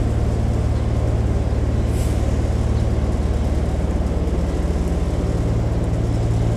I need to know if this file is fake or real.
real